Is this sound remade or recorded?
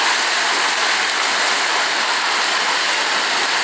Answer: recorded